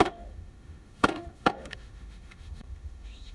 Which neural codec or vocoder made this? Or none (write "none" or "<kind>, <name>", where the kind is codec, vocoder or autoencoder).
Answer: autoencoder, DAC-VAE